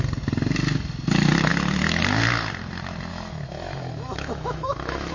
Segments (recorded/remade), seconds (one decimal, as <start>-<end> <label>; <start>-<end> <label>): 0.0-1.5 recorded; 1.5-2.0 remade; 2.0-3.1 recorded; 3.1-5.1 remade